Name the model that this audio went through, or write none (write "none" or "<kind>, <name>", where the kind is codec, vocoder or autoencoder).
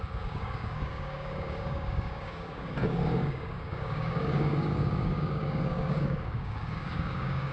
codec, DAC